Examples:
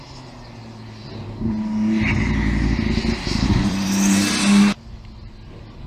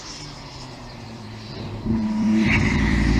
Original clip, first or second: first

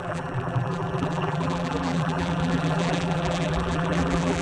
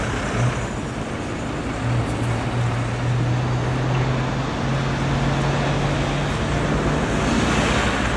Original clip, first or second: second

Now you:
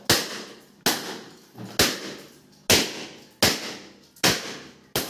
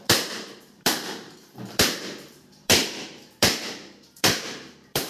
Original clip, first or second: first